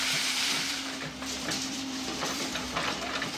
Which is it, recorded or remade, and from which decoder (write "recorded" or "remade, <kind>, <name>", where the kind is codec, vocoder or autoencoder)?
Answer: remade, vocoder, BigVGAN v2